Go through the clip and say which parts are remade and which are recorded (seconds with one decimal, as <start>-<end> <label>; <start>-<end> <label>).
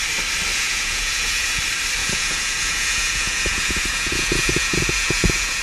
0.0-0.5 recorded; 0.5-1.6 remade; 1.6-2.0 recorded; 2.0-5.6 remade